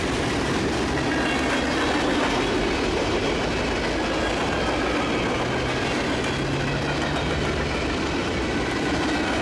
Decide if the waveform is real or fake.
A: real